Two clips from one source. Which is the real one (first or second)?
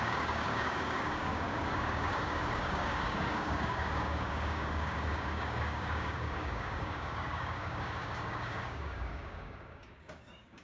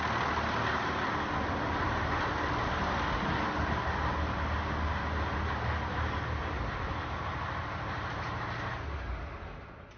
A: second